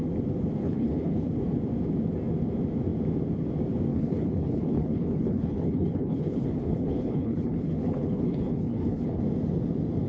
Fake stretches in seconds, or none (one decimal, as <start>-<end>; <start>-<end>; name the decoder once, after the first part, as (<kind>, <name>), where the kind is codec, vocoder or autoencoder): 0.6-1.3 (codec, HILCodec); 3.9-9.2